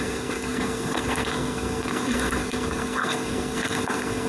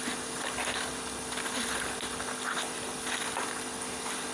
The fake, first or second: first